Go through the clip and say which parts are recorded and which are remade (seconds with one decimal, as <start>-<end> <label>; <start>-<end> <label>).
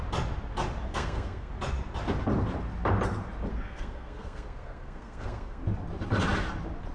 0.0-0.9 recorded; 0.9-1.5 remade; 1.5-3.5 recorded; 3.5-5.6 remade; 5.6-6.9 recorded